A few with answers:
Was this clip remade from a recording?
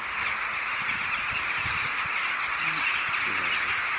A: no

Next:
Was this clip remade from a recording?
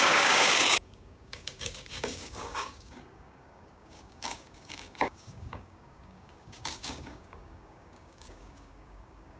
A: yes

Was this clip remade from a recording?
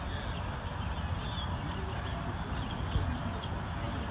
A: no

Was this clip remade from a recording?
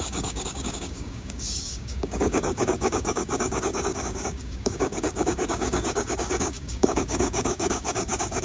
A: yes